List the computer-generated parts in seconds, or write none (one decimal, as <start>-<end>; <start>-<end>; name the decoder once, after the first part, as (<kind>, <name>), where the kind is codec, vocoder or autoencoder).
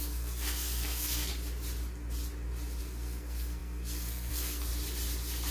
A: 0.0-1.3 (codec, SNAC); 2.8-4.7